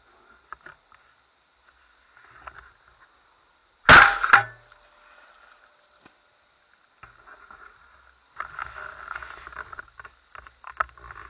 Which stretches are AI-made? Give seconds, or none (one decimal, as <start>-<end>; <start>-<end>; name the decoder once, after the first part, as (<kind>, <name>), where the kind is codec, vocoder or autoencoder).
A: none